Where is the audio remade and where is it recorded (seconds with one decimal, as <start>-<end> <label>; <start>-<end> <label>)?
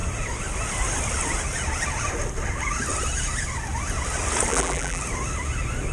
0.0-4.5 recorded; 4.5-5.0 remade; 5.0-5.9 recorded